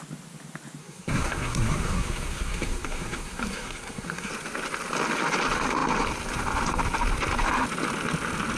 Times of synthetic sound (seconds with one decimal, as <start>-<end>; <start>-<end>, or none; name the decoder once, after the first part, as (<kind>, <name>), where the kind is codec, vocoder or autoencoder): 0.8-4.3 (codec, SNAC)

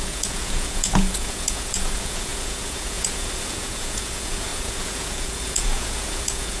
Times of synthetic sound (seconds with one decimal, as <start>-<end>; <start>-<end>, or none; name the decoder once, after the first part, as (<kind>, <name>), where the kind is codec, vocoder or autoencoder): 0.0-6.6 (vocoder, Vocos)

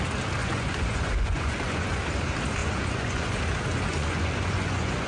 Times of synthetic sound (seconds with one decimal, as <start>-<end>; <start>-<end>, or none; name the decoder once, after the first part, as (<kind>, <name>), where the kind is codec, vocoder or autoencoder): 0.4-2.0 (vocoder, Vocos); 2.6-3.4; 3.9-5.1

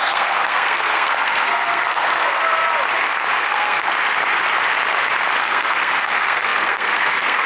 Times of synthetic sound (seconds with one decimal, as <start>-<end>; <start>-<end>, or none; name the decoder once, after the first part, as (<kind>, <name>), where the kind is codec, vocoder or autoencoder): 0.0-2.6 (codec, SNAC); 3.4-3.9; 5.4-7.5

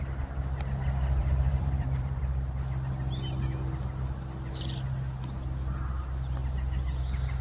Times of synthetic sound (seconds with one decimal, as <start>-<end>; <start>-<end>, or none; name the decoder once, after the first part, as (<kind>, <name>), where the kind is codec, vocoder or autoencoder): 1.2-2.2 (vocoder, BigVGAN v2)

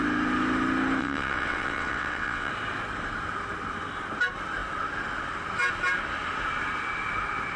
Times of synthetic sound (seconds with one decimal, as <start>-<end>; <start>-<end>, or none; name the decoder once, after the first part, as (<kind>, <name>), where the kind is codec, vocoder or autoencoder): 1.0-2.5 (vocoder, WaveNeXt)

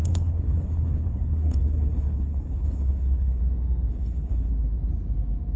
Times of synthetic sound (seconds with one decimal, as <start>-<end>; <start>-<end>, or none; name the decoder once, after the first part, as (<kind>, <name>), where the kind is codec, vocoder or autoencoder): 0.0-3.4 (codec, HILCodec); 3.9-4.5

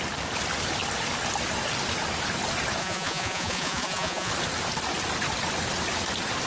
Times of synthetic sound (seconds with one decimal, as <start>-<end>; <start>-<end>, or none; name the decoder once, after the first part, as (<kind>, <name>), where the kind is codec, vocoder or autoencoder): 2.8-4.3 (vocoder, Vocos)